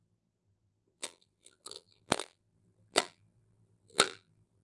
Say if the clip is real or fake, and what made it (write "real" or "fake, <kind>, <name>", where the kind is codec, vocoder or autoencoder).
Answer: fake, vocoder, BigVGAN v2